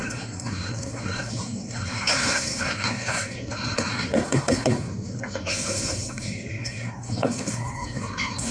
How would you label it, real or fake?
fake